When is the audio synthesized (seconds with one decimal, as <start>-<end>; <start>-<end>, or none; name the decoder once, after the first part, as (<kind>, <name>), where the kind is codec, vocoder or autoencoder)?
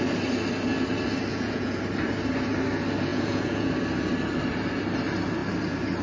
1.3-1.8 (vocoder, Vocos); 3.1-3.7